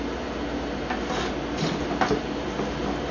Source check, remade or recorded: recorded